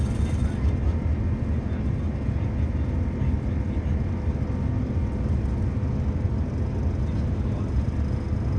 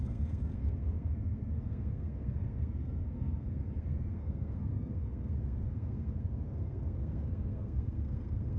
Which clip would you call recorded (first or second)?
first